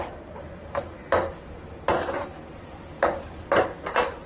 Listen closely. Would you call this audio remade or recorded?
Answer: recorded